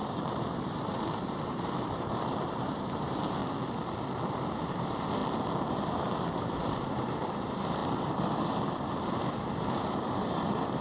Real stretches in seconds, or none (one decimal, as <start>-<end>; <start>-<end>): 3.4-4.3; 5.2-5.7